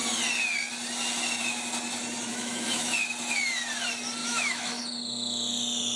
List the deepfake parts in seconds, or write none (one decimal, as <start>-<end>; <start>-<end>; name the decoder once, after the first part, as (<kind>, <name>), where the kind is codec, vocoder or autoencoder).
2.3-2.9 (autoencoder, DAC-VAE); 4.2-4.8